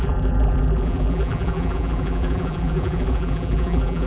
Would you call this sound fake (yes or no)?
yes